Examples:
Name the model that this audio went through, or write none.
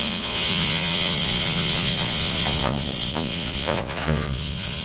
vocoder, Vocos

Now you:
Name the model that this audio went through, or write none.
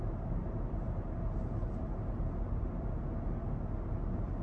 none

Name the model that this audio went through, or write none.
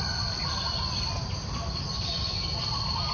none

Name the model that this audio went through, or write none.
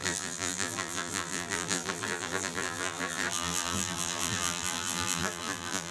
vocoder, BigVGAN v2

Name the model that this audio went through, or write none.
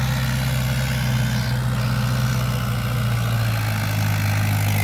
none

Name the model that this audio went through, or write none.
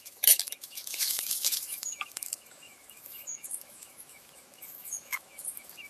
autoencoder, DAC-VAE